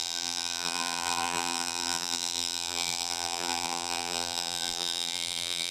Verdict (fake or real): fake